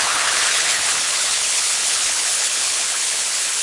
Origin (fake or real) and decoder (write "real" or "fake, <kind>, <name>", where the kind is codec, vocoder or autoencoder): fake, codec, HILCodec